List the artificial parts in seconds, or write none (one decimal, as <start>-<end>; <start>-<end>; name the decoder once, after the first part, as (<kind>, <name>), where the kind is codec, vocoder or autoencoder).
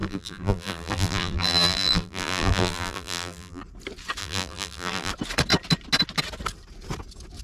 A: 0.0-3.6 (vocoder, BigVGAN v2); 4.2-5.1